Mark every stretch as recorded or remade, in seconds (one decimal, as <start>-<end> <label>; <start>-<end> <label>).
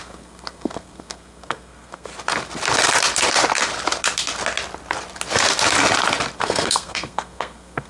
0.0-2.1 remade; 2.1-6.4 recorded; 6.4-7.9 remade